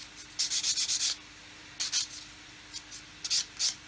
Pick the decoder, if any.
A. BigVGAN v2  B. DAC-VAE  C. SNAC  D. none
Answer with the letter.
D